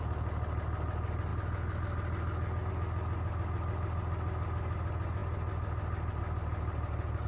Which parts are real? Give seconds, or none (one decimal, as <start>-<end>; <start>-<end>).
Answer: 0.0-7.3